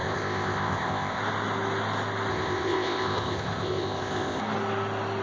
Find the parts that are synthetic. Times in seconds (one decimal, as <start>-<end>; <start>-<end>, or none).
0.0-1.2; 2.3-4.4